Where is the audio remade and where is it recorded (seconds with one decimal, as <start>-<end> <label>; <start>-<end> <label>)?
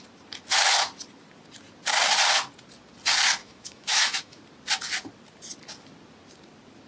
0.0-3.4 recorded; 3.4-4.4 remade; 4.4-6.9 recorded